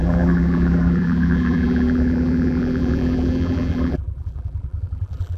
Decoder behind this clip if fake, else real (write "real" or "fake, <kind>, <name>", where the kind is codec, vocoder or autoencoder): fake, vocoder, BigVGAN v2